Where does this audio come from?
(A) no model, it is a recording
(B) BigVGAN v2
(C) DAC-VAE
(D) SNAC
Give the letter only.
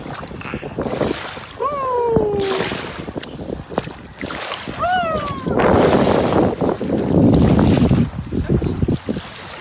A